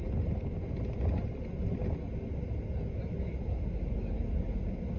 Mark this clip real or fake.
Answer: real